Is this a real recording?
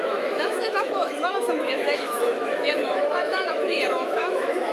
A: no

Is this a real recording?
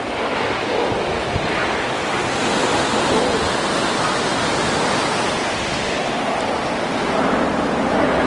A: yes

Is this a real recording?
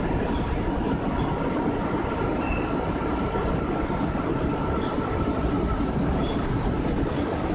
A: yes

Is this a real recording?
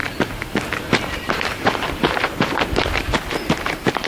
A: no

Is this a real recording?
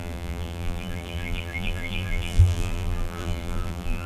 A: no